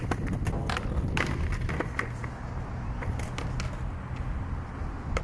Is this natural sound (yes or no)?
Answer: yes